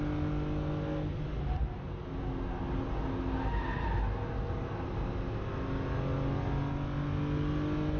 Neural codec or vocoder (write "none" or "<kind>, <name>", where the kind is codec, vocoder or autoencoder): none